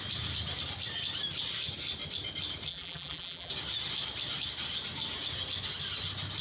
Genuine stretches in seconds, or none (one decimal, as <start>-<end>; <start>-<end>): 0.0-2.7; 3.5-6.4